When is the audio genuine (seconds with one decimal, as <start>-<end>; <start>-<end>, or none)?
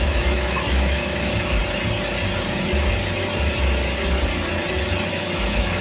1.6-5.1